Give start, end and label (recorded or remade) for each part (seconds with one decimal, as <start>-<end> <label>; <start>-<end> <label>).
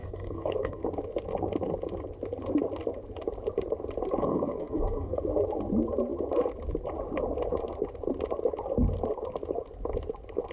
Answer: 0.0-0.8 remade; 0.8-4.2 recorded; 4.2-5.2 remade; 5.2-10.5 recorded